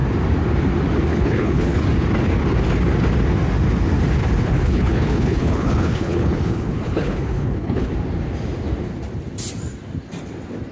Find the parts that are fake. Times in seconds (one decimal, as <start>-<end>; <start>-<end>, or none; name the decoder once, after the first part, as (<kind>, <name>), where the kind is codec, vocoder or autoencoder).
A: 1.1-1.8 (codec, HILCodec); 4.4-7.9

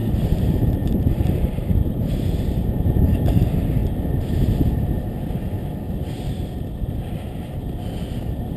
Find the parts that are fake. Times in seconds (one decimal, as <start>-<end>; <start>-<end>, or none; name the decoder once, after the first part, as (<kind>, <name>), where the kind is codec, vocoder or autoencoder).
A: 0.0-3.0 (vocoder, BigVGAN v2)

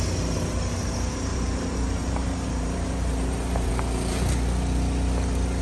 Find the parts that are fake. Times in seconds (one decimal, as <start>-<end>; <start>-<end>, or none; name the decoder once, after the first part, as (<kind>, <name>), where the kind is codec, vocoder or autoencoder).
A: 1.3-3.7 (vocoder, BigVGAN v2)

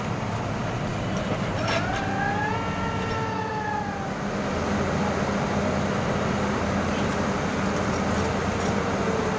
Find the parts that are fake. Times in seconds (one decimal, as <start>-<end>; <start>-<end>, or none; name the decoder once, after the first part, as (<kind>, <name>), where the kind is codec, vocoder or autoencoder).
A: none

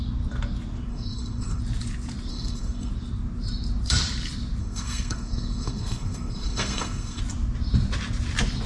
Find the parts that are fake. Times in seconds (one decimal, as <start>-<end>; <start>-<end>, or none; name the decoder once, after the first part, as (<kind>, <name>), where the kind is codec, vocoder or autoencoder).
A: 0.9-1.6 (codec, SNAC); 2.3-2.9; 4.6-7.2

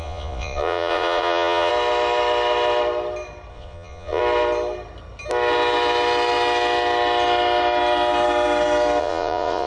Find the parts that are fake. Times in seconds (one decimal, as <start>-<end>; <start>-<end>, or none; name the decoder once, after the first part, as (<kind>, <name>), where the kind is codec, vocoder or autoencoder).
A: 0.0-1.7 (vocoder, Vocos); 3.5-4.2; 9.0-9.7

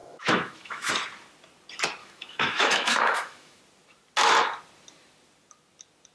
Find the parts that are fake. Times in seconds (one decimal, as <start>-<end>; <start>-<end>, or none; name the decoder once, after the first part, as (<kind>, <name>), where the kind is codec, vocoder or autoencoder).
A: 0.0-0.9 (autoencoder, DAC-VAE); 2.0-3.6